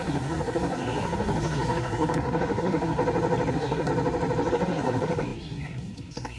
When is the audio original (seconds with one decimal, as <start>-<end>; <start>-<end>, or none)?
3.0-3.5; 3.9-4.5